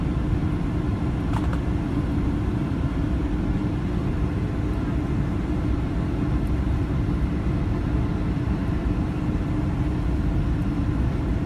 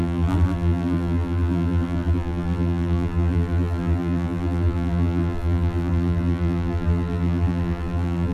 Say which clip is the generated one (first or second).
second